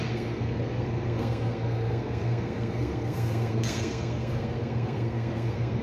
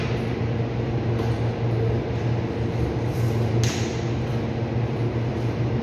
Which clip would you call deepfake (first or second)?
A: first